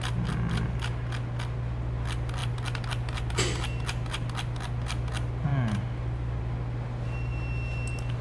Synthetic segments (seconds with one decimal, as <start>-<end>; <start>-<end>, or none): none